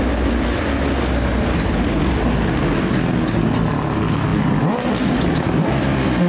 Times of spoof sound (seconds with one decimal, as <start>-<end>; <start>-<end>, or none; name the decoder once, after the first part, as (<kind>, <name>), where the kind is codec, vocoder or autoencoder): none